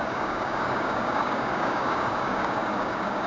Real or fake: fake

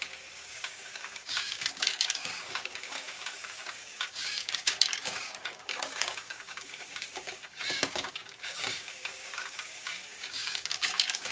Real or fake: fake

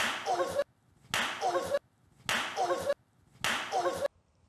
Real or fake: real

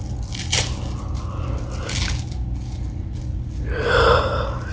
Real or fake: real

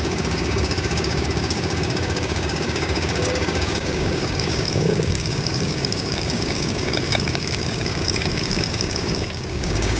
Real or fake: fake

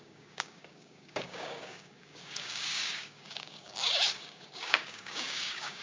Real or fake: fake